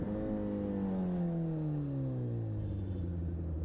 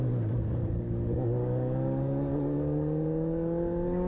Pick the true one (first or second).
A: first